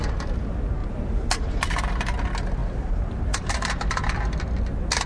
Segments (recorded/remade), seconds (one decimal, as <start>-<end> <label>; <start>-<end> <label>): 0.0-0.8 recorded; 0.8-1.3 remade; 1.3-2.6 recorded; 2.6-3.7 remade; 3.7-5.1 recorded